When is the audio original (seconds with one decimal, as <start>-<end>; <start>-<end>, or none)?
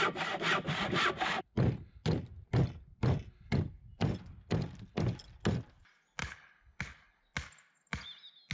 0.0-6.2; 7.2-8.5